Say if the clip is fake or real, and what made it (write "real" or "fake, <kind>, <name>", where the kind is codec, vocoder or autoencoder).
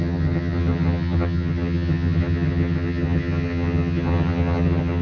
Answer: fake, vocoder, HiFi-GAN